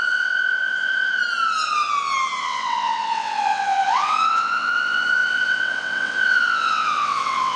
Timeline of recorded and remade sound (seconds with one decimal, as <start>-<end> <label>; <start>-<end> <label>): 0.0-1.2 remade; 1.2-2.4 recorded; 2.4-7.6 remade